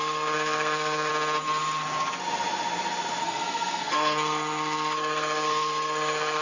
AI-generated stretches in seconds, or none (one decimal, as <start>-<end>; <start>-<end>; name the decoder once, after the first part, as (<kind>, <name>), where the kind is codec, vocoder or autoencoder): 0.0-1.1 (codec, SNAC); 3.2-6.4